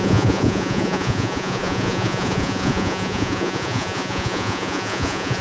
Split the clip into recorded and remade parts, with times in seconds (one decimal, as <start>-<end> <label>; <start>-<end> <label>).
0.0-5.4 remade